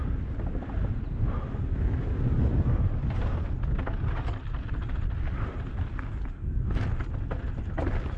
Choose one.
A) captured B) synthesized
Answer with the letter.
A